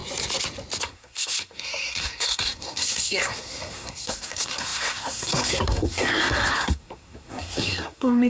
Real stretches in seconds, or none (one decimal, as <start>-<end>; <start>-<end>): 0.0-0.8